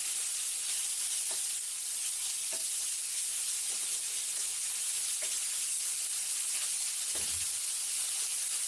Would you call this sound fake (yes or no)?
no